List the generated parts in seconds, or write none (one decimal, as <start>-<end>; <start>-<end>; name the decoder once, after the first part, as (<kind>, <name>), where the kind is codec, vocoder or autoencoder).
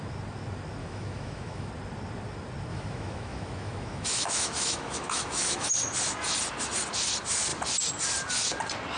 0.8-1.7 (autoencoder, DAC-VAE); 2.7-5.7